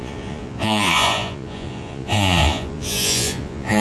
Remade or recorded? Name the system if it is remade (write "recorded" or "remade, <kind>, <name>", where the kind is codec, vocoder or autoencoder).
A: remade, vocoder, Vocos